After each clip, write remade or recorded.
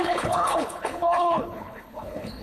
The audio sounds remade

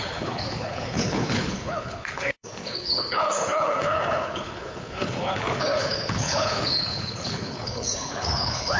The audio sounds remade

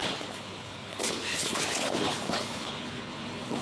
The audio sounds remade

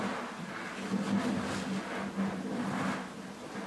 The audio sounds recorded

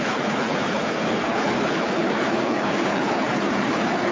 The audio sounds remade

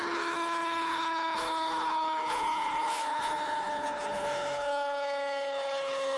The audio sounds remade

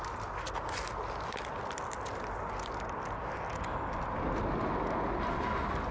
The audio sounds recorded